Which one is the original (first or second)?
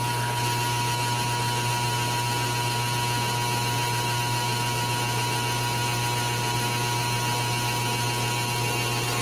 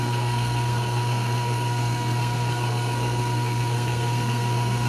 first